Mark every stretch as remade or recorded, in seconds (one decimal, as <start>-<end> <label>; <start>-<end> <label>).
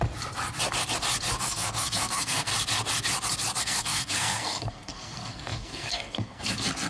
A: 0.0-1.4 recorded; 1.4-2.5 remade; 2.5-3.6 recorded; 3.6-6.9 remade